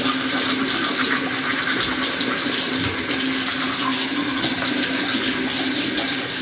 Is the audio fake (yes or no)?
no